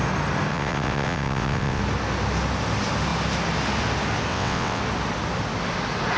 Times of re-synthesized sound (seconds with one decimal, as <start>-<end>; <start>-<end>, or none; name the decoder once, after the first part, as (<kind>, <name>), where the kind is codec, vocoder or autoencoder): 0.5-1.8 (vocoder, WaveNeXt); 4.3-4.8